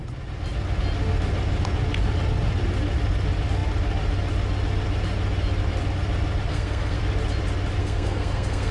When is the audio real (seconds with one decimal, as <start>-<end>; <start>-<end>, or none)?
0.0-6.5; 7.0-7.8